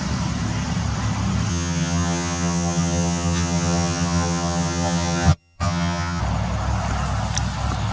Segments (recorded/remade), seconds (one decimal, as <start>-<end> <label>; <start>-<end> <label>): 0.0-1.5 recorded; 1.5-6.2 remade; 6.2-7.9 recorded